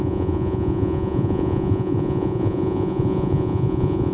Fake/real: fake